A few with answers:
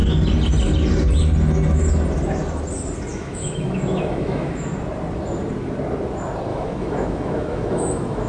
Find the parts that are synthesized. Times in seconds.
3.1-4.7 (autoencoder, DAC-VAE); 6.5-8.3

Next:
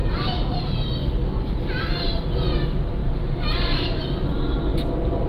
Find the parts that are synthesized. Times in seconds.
0.0-1.8 (vocoder, BigVGAN v2); 3.0-4.0

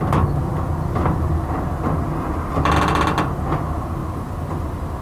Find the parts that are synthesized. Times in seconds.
none

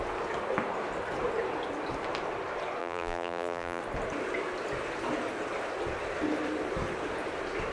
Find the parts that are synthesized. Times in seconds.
2.8-3.8 (vocoder, BigVGAN v2)

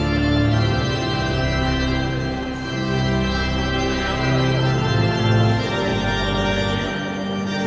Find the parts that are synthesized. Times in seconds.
none

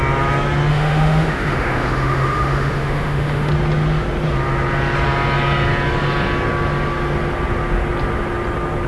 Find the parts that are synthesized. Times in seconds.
0.7-3.5 (autoencoder, DAC-VAE)

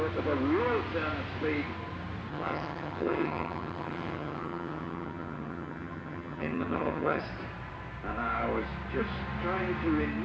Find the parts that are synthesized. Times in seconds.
2.3-7.2 (vocoder, HiFi-GAN)

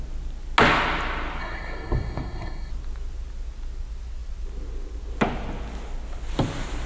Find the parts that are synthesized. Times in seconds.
1.4-2.7 (codec, SNAC)